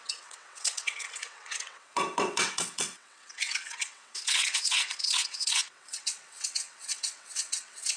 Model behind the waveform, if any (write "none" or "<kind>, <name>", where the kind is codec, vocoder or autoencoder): vocoder, WaveNeXt